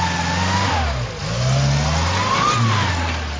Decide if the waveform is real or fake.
real